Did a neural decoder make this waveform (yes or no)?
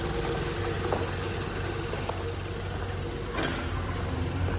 no